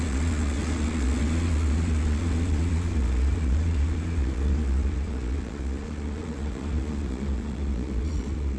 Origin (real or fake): fake